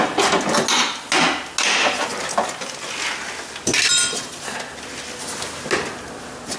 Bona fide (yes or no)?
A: yes